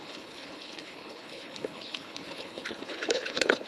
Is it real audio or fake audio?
fake